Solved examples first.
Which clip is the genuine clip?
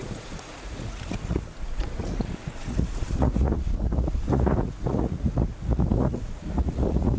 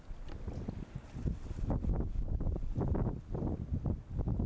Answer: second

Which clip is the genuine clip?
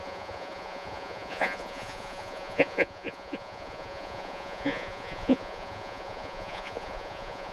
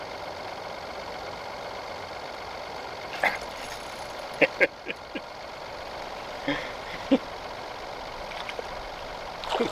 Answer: second